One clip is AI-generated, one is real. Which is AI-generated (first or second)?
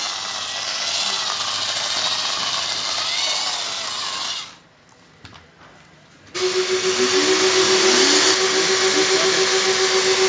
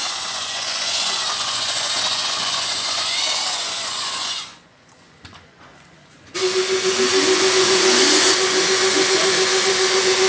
second